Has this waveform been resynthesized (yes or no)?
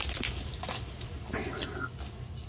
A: no